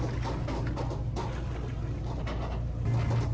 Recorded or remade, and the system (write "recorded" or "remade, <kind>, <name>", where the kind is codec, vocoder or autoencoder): recorded